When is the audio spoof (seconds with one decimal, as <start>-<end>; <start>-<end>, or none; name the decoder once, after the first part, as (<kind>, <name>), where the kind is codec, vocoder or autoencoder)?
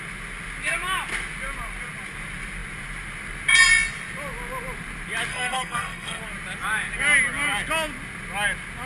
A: 5.3-6.2 (codec, SNAC)